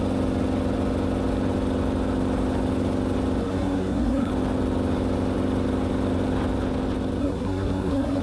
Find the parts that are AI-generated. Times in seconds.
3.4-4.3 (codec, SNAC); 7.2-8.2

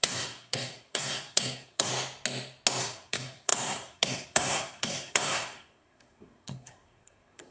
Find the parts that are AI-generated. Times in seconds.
0.0-1.9 (codec, SNAC); 2.8-7.5

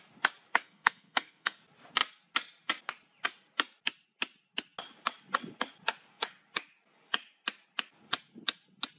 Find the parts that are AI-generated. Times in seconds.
0.6-1.6 (codec, SNAC)

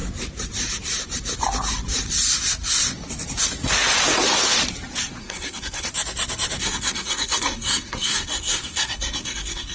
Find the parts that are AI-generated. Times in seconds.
5.2-5.9 (codec, SNAC); 6.6-9.7

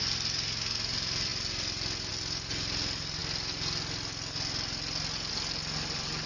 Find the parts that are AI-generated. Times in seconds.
none

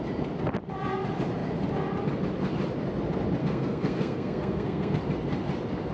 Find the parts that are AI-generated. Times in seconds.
3.4-5.0 (codec, SNAC)